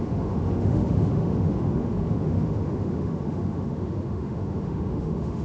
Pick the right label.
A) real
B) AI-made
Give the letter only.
B